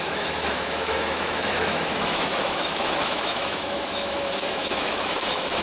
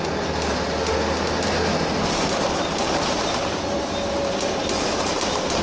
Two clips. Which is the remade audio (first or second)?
first